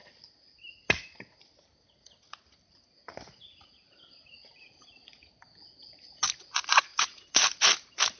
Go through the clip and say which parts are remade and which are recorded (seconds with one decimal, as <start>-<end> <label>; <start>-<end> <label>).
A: 0.0-6.9 recorded; 6.9-7.7 remade; 7.7-8.2 recorded